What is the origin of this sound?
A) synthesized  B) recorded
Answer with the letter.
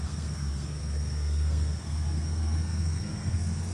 A